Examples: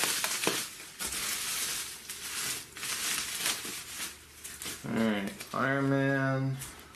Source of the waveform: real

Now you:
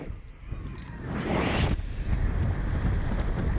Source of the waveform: fake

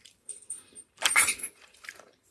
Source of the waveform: fake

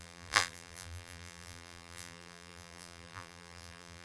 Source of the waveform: fake